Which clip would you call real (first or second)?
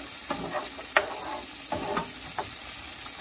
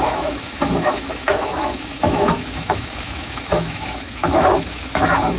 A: first